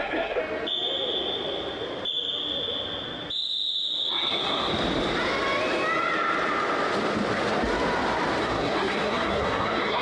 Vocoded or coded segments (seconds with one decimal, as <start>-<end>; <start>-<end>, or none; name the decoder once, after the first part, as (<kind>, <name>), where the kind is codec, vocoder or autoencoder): 0.0-0.4 (codec, SNAC); 4.1-4.7; 8.4-10.0